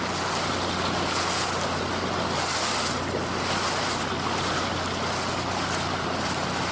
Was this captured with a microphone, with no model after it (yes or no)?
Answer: yes